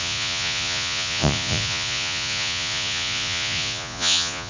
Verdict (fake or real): fake